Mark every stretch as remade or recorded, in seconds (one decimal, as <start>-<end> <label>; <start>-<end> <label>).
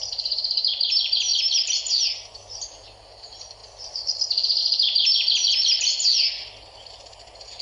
0.0-1.3 remade; 1.3-2.1 recorded; 2.1-3.6 remade; 3.6-4.6 recorded; 4.6-5.5 remade; 5.5-7.6 recorded